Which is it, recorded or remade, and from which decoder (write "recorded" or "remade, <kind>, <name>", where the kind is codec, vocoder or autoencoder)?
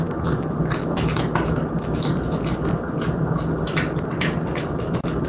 recorded